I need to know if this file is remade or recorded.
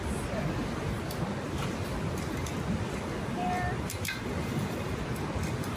remade